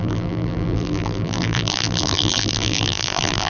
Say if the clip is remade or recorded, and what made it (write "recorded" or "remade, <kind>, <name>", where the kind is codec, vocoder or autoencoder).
remade, vocoder, BigVGAN v2